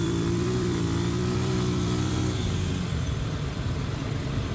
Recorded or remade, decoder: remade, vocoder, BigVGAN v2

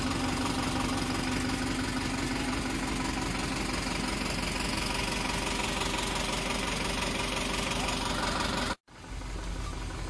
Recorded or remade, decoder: recorded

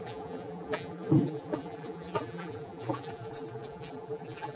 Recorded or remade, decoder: remade, vocoder, BigVGAN v2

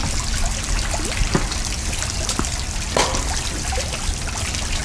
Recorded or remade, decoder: recorded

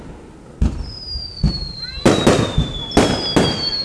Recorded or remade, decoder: recorded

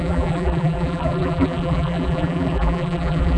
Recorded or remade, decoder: remade, vocoder, BigVGAN v2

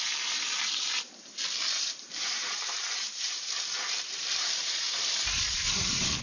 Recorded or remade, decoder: remade, vocoder, BigVGAN v2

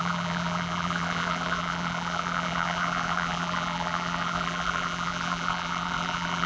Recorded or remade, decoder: remade, vocoder, BigVGAN v2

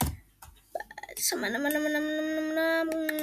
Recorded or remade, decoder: recorded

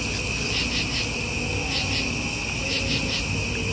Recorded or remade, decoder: recorded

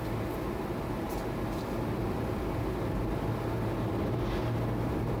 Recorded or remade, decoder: recorded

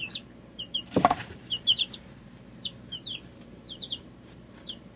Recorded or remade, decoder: remade, vocoder, BigVGAN v2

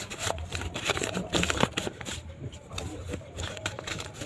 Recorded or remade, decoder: remade, vocoder, BigVGAN v2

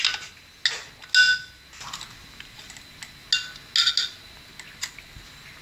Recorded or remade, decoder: recorded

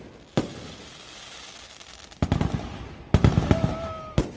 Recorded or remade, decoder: recorded